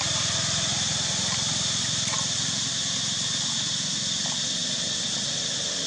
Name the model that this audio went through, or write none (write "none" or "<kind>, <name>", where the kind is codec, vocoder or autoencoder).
none